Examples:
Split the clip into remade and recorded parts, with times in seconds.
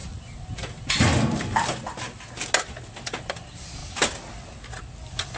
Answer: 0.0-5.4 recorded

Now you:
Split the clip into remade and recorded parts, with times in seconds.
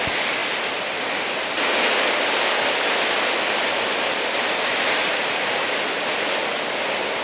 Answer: 0.0-6.4 recorded; 6.4-7.2 remade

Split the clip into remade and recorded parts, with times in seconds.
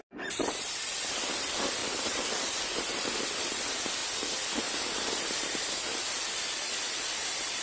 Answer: 0.0-1.8 recorded; 1.8-2.6 remade; 2.6-7.6 recorded